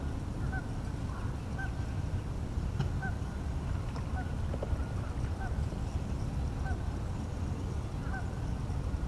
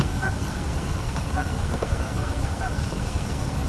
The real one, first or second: first